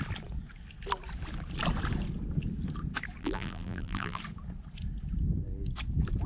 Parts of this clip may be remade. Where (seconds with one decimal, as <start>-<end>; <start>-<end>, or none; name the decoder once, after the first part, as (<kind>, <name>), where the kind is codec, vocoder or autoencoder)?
3.2-4.2 (vocoder, BigVGAN v2)